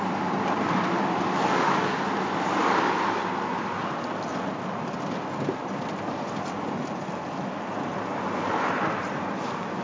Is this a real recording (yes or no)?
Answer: yes